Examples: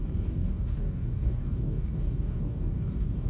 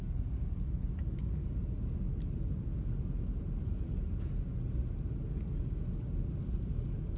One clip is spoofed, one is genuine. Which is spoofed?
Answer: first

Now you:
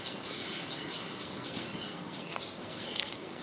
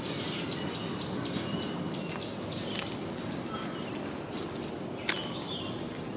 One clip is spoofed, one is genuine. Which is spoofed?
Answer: first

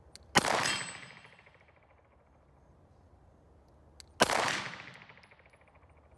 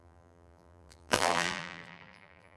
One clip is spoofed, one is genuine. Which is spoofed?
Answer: second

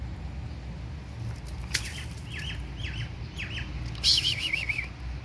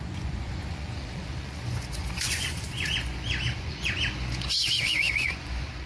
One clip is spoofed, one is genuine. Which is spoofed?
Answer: second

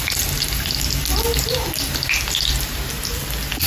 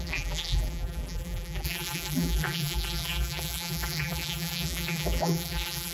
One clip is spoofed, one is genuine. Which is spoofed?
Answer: second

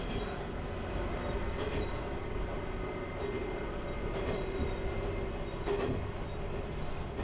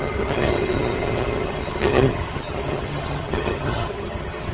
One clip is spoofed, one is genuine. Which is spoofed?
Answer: second